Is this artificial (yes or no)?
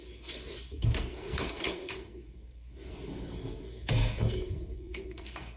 yes